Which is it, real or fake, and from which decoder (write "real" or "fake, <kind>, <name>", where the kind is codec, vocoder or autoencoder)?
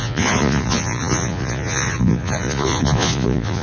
fake, vocoder, Vocos